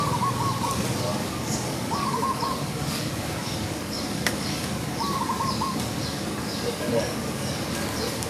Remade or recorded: remade